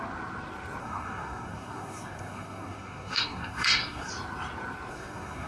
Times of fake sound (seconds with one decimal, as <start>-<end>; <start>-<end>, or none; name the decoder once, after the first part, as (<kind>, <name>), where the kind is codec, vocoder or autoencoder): 0.8-4.1 (codec, SNAC); 4.9-5.5